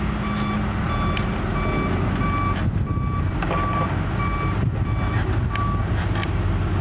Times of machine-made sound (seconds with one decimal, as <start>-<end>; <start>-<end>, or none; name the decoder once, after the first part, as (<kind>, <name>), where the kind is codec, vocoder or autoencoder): none